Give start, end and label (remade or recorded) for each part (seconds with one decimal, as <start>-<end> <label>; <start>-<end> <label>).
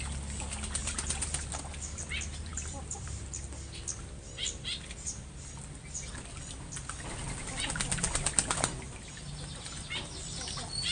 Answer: 0.0-0.8 recorded; 0.8-1.5 remade; 1.5-2.5 recorded; 2.5-3.2 remade; 3.2-10.9 recorded